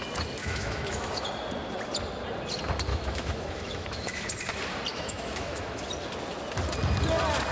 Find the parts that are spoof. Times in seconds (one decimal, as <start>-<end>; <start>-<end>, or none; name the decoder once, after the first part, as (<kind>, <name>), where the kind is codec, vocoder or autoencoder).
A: 0.4-1.1 (autoencoder, DAC-VAE); 2.9-4.2; 4.9-5.8